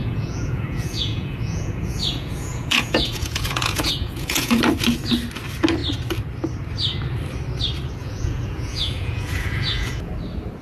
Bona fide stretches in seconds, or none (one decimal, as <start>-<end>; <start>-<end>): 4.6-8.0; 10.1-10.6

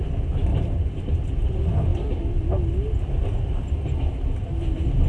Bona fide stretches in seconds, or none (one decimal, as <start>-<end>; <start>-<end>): 0.0-0.5; 1.0-5.1

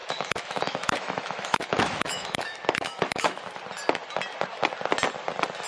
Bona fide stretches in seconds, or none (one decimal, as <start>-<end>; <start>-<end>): 3.4-5.7

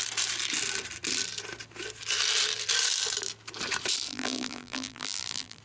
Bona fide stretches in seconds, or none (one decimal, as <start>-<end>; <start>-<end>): 0.0-4.1

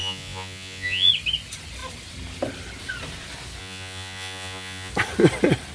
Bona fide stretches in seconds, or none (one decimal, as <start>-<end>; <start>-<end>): 1.1-3.6; 4.9-5.7